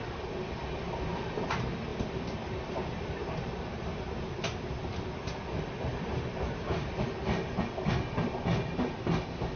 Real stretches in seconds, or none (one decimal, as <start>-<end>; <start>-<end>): 0.0-1.9; 4.7-5.9; 6.9-9.6